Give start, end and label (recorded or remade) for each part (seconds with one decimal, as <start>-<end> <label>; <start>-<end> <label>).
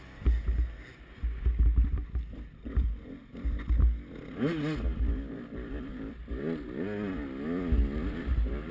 0.0-8.7 recorded